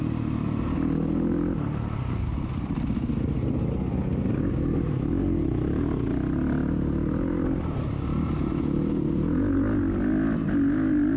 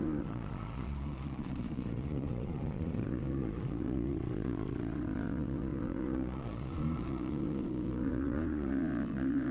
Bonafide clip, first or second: first